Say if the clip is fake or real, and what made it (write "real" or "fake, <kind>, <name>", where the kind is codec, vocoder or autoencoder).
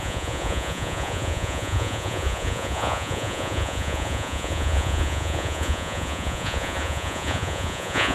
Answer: fake, vocoder, Vocos